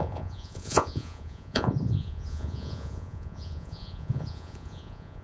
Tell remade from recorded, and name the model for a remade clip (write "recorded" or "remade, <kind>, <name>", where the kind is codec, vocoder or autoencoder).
remade, vocoder, Vocos